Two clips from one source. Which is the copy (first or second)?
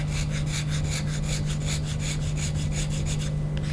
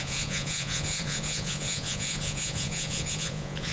second